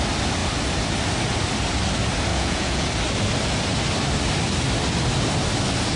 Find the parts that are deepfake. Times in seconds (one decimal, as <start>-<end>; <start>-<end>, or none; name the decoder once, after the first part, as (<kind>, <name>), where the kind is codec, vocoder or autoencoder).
2.3-2.9 (vocoder, Vocos)